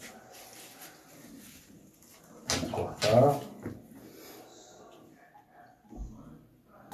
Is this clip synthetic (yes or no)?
no